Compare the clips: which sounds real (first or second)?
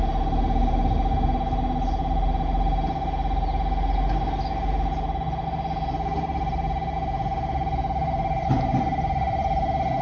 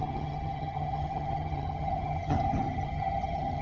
first